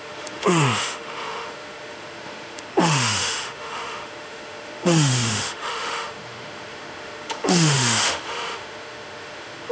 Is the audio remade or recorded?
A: remade